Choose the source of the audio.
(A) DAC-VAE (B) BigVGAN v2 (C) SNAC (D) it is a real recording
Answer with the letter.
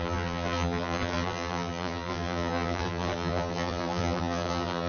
B